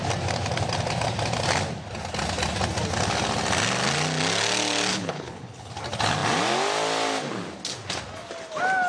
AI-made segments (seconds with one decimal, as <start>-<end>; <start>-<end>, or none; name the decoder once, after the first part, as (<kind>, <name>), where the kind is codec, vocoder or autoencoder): 4.9-5.7 (codec, HILCodec)